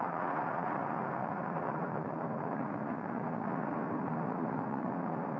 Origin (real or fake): fake